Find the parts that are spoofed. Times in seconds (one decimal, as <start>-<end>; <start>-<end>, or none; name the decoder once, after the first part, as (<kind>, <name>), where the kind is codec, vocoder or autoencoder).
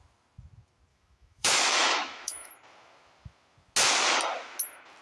0.9-2.5 (autoencoder, DAC-VAE)